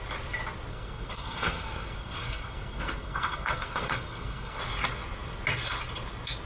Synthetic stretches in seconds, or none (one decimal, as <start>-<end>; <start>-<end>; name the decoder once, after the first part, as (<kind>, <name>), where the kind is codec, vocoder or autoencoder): 0.7-4.6 (codec, SNAC)